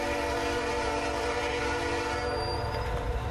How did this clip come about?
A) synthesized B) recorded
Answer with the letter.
B